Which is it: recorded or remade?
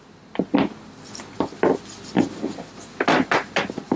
recorded